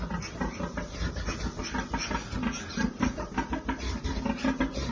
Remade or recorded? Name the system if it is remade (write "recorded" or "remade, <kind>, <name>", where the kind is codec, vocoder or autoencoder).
recorded